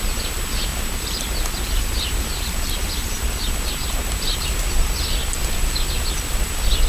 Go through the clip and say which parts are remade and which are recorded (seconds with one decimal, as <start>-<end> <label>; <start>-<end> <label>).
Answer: 0.0-0.7 recorded; 0.7-3.7 remade; 3.7-6.9 recorded